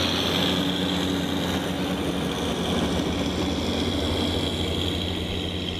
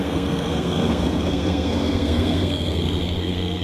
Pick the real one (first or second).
first